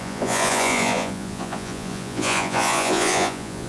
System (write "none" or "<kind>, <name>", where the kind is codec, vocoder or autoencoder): vocoder, Vocos